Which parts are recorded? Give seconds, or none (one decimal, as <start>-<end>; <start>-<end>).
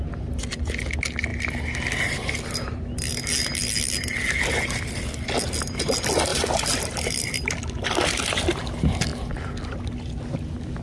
0.0-6.3; 8.6-10.8